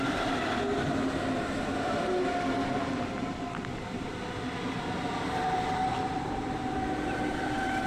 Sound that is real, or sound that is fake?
real